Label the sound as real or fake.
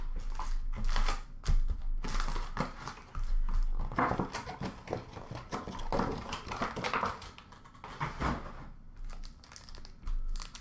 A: real